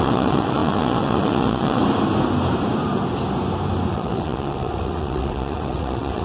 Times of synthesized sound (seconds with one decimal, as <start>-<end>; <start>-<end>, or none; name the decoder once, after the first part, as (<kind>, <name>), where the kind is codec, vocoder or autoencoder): 0.0-1.8 (vocoder, WaveNeXt); 3.9-6.2